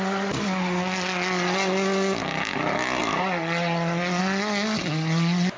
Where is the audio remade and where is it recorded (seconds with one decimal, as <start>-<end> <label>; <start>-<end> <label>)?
0.0-5.6 recorded